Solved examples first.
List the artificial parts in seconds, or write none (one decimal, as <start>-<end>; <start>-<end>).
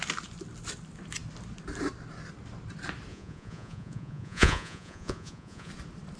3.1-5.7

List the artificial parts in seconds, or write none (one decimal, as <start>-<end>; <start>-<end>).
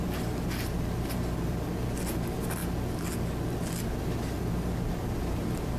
none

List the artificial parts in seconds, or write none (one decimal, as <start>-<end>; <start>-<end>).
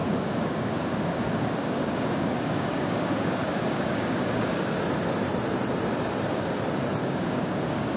0.0-4.8; 7.0-8.0